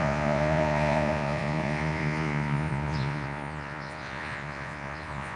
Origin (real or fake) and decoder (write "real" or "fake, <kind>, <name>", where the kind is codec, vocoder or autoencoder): fake, vocoder, Vocos